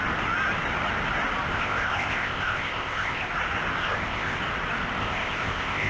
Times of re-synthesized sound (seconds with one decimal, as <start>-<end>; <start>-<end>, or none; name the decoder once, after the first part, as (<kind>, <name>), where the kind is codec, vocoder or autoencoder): 1.5-3.3 (codec, ZipCodec); 3.8-4.4; 5.0-5.9